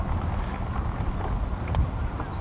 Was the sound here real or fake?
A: real